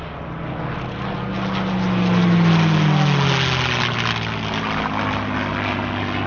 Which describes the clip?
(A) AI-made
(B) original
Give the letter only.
B